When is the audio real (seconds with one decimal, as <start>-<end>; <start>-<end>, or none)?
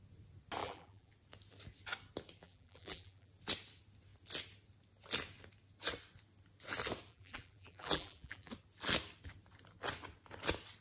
0.0-0.6; 1.1-2.4; 3.3-7.1; 8.5-10.8